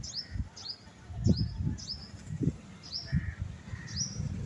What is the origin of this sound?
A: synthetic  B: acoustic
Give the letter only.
B